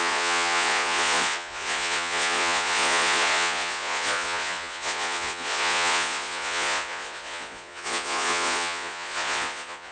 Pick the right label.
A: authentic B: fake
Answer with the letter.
B